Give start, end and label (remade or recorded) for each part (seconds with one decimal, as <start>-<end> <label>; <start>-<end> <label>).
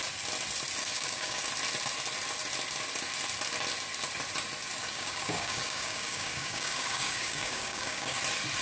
0.0-0.8 recorded; 0.8-1.4 remade; 1.4-4.8 recorded; 4.8-8.2 remade; 8.2-8.6 recorded